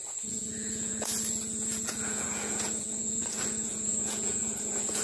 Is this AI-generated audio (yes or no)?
yes